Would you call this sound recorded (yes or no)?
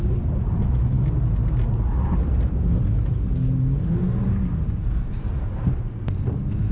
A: yes